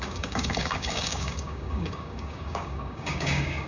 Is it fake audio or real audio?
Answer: fake